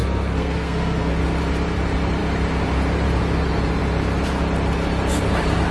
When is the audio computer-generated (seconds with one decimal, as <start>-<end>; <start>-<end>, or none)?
0.0-1.1